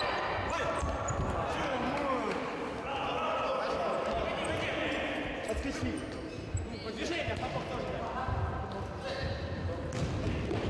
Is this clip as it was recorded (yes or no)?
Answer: yes